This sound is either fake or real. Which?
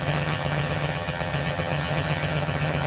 fake